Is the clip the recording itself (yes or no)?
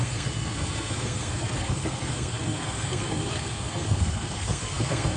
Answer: no